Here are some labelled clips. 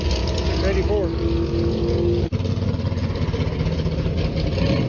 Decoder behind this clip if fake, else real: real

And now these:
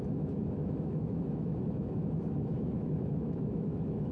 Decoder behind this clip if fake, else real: fake, autoencoder, DAC-VAE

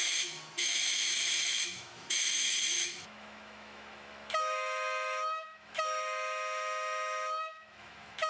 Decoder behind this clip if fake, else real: fake, autoencoder, DAC-VAE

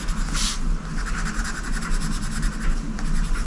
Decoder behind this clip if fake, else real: real